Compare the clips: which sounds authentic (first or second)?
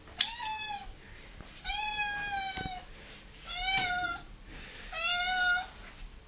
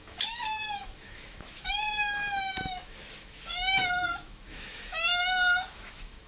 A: first